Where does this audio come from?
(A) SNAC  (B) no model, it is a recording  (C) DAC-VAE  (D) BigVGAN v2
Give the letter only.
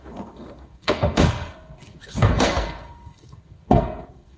A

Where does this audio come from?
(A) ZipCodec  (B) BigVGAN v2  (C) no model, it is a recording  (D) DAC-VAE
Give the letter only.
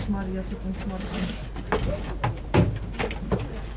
C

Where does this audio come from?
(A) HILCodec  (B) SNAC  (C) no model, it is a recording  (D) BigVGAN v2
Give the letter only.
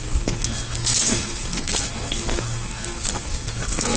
B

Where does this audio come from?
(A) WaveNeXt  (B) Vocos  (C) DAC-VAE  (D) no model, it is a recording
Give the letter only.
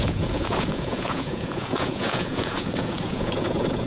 B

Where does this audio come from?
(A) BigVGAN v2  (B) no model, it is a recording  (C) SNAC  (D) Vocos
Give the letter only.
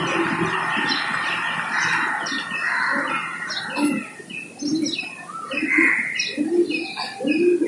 B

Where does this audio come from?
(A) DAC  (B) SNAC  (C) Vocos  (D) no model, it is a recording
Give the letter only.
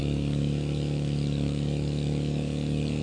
A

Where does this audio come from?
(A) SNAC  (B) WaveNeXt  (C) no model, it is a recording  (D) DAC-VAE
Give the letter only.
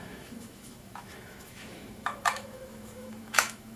D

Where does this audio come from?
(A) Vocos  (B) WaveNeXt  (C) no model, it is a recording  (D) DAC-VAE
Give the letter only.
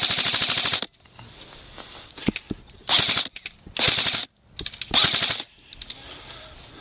C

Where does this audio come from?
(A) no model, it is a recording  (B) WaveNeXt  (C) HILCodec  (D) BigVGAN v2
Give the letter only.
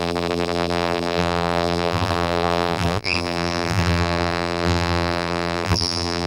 D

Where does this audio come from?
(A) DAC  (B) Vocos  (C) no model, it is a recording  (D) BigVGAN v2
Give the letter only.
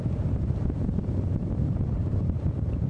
D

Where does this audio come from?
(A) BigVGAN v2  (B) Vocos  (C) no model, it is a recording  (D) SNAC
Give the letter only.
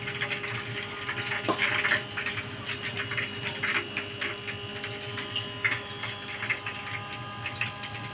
C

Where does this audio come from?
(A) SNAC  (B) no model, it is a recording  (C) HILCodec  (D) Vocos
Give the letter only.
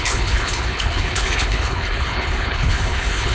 C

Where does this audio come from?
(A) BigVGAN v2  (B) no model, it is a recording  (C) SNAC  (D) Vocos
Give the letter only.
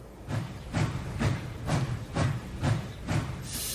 A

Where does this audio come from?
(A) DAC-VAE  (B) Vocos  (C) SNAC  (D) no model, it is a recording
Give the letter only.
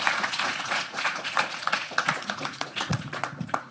B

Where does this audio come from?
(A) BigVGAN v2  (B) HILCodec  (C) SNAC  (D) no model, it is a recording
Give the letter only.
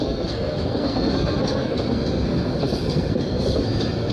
C